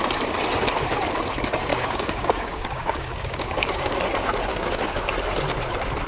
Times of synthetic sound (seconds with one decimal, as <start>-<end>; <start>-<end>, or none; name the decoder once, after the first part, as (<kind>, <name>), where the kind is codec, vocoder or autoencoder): 1.7-4.0 (codec, DAC); 4.5-5.1